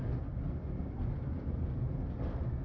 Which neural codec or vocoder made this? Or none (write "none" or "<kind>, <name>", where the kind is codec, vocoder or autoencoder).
none